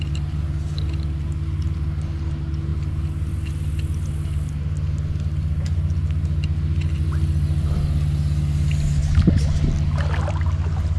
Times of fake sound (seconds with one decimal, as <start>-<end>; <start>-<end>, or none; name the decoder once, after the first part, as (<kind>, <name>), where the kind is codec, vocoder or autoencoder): none